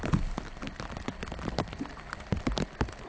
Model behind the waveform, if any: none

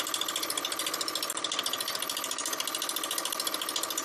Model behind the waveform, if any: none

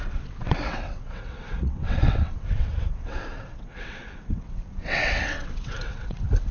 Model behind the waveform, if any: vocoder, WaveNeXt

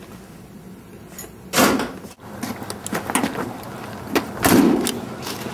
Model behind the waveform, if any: none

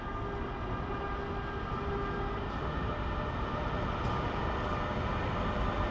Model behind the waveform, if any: none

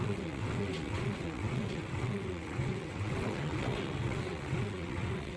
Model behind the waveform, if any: vocoder, WaveNeXt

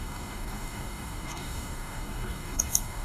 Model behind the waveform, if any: codec, DAC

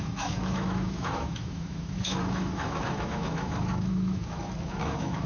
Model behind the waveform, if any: autoencoder, DAC-VAE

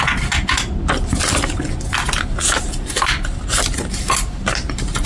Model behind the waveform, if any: none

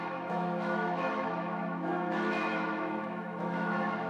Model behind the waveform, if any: autoencoder, DAC-VAE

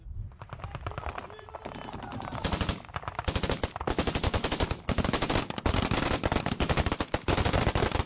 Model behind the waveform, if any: none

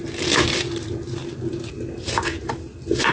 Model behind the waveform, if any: none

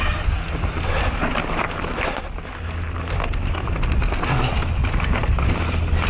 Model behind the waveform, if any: none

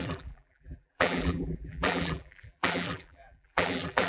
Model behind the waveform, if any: vocoder, BigVGAN v2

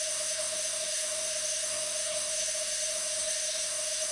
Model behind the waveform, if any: codec, SNAC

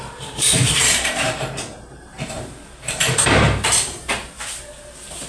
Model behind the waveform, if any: vocoder, BigVGAN v2